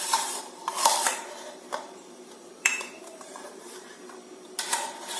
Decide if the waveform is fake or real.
fake